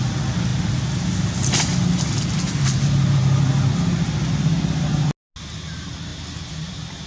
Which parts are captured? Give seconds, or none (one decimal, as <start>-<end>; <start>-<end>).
0.0-7.1